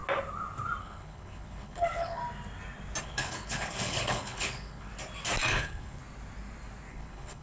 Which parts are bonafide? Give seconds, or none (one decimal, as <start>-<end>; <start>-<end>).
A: 0.0-0.8; 2.2-3.0; 4.9-5.5; 6.0-6.9